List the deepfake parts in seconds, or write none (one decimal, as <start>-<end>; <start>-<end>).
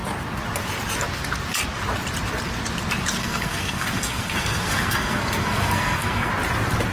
3.2-6.3